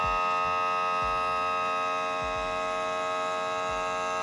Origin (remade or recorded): recorded